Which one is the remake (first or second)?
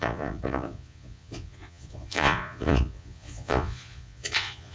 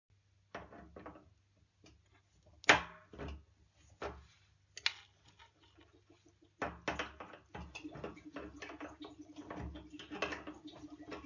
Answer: first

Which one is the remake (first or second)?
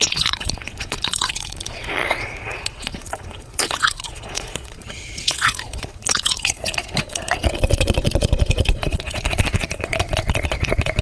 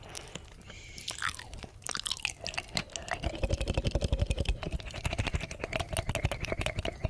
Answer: first